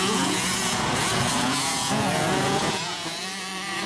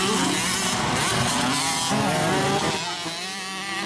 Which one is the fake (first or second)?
first